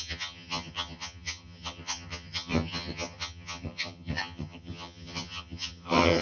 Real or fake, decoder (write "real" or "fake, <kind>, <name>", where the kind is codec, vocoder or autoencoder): fake, vocoder, HiFi-GAN